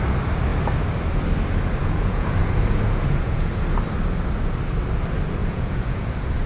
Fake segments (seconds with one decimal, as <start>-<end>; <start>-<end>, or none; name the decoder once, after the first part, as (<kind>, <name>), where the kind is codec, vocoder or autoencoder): 1.8-3.5 (vocoder, Vocos); 5.4-6.5